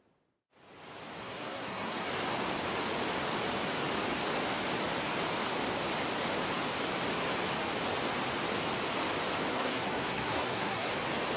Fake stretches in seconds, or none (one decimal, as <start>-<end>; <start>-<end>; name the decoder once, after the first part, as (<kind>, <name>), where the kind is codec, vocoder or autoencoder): 1.2-2.1 (codec, SNAC); 9.5-10.9